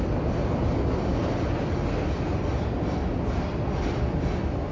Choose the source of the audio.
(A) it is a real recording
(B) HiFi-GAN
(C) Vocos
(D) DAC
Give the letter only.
A